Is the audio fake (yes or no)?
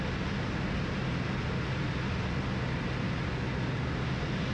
no